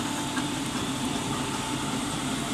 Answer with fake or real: real